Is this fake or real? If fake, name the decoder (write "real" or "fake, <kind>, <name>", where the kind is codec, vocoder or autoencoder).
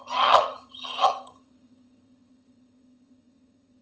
fake, vocoder, HiFi-GAN